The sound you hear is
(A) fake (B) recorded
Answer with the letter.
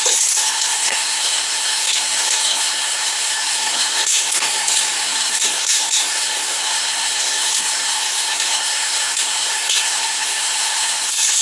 A